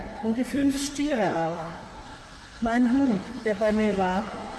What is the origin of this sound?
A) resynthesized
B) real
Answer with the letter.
A